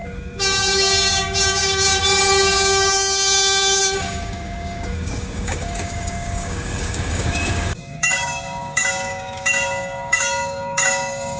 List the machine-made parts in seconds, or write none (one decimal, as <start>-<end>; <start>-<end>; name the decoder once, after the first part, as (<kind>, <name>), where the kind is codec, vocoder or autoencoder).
0.0-11.4 (codec, DAC)